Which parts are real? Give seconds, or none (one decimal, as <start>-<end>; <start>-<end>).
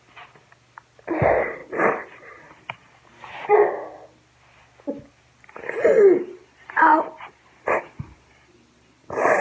0.0-9.4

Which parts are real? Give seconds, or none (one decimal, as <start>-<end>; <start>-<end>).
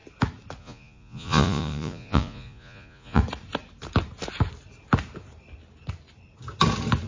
0.0-0.6; 3.2-7.1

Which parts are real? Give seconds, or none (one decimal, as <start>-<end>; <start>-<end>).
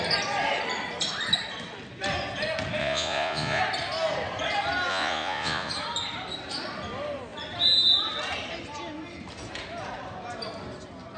0.0-2.8; 3.6-4.9; 5.7-11.2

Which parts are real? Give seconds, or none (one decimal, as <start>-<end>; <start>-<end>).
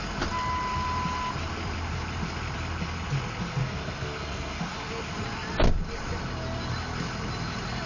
0.0-3.6; 4.6-7.9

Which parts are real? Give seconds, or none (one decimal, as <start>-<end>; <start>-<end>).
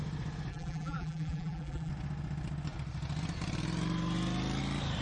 0.0-0.5; 1.9-5.0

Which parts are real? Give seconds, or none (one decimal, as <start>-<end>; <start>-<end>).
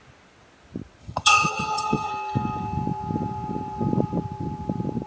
0.0-1.0; 2.1-5.1